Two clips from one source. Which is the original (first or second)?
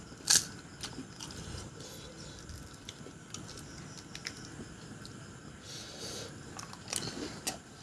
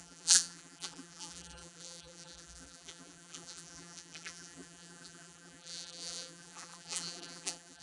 first